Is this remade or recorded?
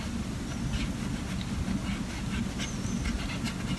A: recorded